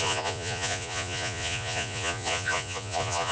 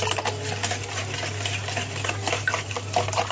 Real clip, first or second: second